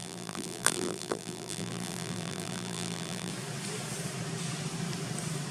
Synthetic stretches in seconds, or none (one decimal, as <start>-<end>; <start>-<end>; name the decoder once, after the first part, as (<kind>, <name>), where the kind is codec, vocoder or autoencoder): 0.0-3.3 (vocoder, BigVGAN v2)